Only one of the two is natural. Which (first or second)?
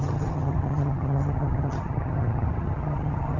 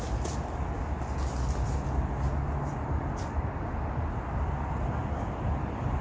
second